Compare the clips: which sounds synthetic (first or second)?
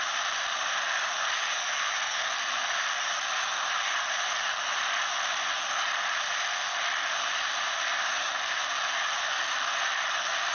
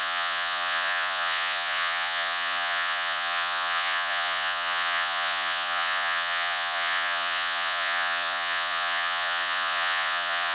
second